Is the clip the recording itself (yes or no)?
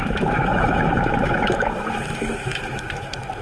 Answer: no